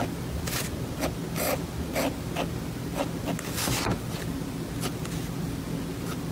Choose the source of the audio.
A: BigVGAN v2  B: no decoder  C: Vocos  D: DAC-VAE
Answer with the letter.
B